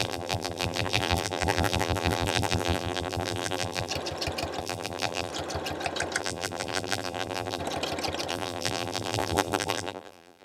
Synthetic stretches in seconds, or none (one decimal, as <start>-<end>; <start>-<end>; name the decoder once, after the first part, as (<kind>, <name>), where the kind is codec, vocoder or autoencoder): 0.0-3.9 (vocoder, BigVGAN v2); 4.6-5.3; 6.2-7.6; 8.3-10.4

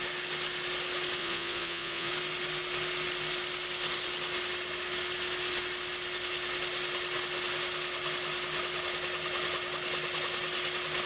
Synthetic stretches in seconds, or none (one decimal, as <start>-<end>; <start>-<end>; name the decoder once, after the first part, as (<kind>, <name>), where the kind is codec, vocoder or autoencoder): 1.2-2.1 (vocoder, Vocos)

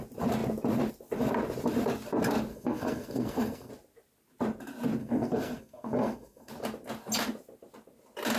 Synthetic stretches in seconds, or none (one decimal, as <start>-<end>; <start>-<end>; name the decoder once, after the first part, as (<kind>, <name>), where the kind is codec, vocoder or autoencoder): 2.5-3.7 (codec, SNAC); 5.0-6.5

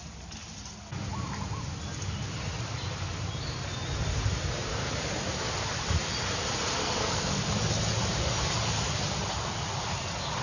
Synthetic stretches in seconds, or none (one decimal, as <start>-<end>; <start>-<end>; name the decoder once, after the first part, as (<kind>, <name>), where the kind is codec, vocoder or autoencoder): 6.8-7.4 (codec, SNAC)

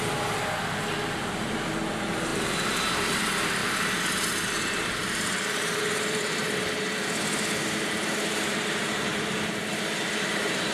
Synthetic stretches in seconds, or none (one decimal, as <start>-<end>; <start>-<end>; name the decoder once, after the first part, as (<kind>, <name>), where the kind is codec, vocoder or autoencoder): 0.0-3.6 (vocoder, BigVGAN v2); 4.3-6.4; 8.1-9.1; 10.1-10.7

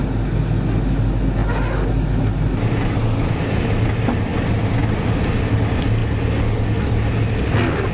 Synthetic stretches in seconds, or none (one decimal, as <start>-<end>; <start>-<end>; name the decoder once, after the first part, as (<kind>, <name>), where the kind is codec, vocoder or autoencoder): none